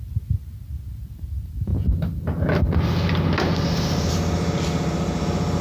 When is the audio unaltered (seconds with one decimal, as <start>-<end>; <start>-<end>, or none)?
0.0-5.6